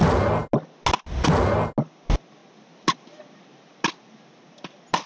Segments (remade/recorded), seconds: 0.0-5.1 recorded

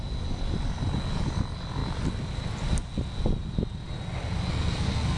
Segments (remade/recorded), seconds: 0.0-4.5 recorded; 4.5-5.2 remade

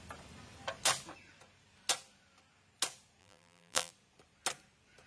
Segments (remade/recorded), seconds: 0.0-3.2 recorded; 3.2-3.9 remade; 3.9-5.1 recorded